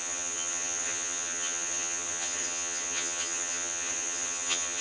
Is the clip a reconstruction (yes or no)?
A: yes